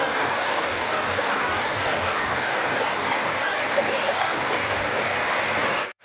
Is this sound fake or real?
fake